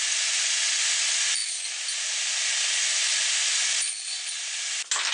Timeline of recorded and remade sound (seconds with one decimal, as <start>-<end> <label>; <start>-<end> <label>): 0.0-5.1 recorded